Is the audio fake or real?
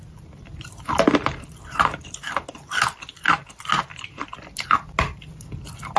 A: real